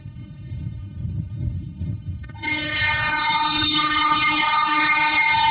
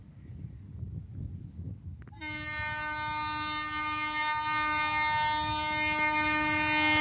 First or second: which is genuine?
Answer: second